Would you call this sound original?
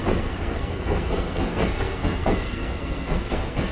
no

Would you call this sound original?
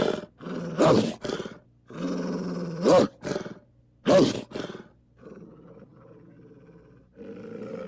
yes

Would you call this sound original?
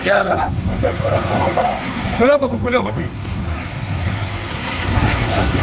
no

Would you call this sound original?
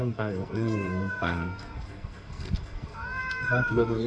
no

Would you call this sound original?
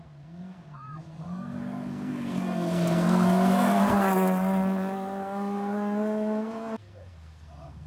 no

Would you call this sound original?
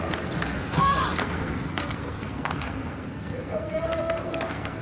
no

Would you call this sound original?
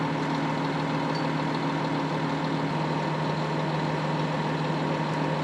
yes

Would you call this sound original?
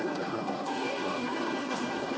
no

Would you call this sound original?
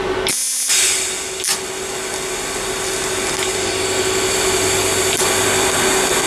yes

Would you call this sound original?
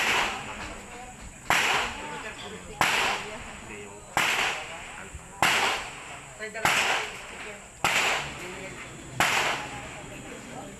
yes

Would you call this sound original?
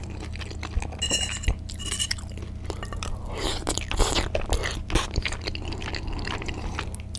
yes